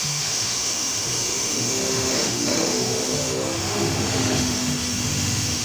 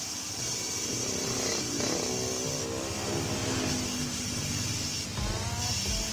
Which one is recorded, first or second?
second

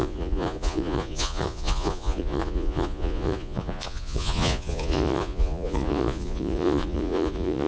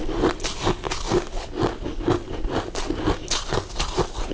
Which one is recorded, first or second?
second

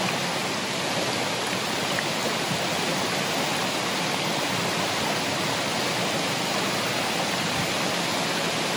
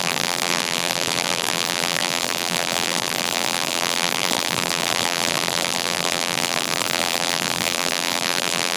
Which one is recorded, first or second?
first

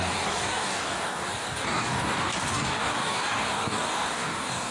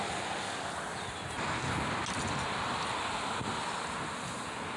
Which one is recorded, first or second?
second